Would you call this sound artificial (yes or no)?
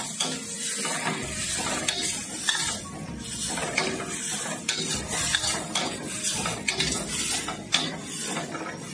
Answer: no